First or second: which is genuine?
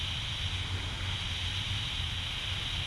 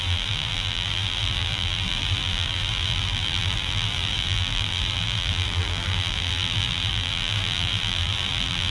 first